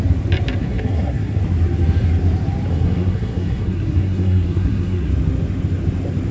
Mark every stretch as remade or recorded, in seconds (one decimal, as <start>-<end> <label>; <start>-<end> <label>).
0.0-0.6 recorded; 0.6-1.4 remade; 1.4-2.7 recorded; 2.7-5.1 remade; 5.1-6.3 recorded